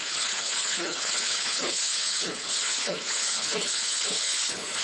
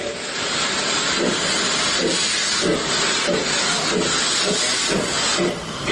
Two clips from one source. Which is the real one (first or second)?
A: second